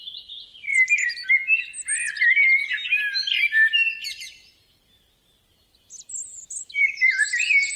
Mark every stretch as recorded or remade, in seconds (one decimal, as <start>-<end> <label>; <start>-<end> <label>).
0.0-0.7 recorded; 0.7-1.3 remade; 1.3-6.6 recorded; 6.6-7.8 remade